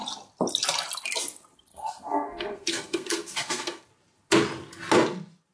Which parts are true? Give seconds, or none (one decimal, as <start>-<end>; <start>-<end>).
0.0-1.7; 3.9-5.5